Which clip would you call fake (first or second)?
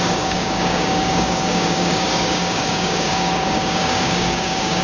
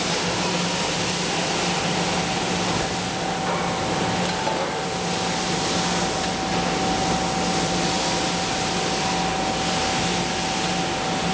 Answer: first